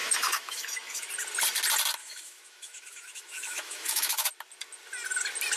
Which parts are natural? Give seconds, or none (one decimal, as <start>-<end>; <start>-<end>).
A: 1.1-2.0; 4.3-5.6